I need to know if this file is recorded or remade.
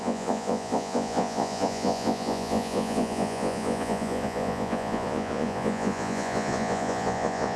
remade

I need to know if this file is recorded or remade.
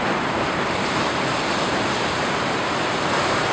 remade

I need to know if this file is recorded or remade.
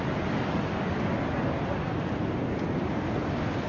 recorded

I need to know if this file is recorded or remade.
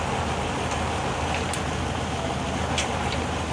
recorded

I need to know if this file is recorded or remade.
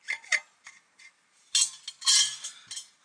recorded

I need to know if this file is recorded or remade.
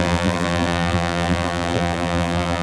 remade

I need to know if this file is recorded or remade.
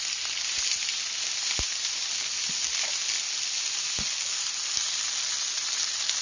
recorded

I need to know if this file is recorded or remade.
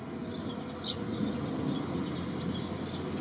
recorded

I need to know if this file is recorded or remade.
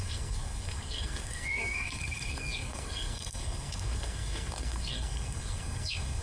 remade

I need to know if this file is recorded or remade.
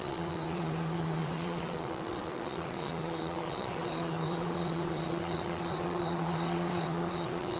remade